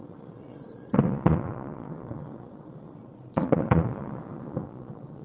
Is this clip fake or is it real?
fake